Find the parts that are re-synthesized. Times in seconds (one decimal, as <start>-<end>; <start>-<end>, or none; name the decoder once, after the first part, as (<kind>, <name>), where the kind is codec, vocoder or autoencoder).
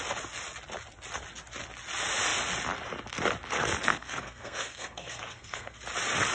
3.9-5.8 (codec, SNAC)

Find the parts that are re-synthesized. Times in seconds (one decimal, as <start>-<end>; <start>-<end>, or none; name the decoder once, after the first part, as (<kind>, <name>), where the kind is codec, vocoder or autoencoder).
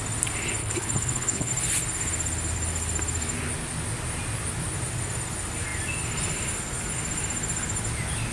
0.6-1.5 (codec, HILCodec)